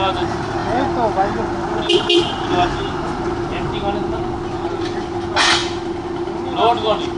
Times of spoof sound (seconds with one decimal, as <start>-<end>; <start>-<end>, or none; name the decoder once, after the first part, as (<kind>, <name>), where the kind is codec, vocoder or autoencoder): none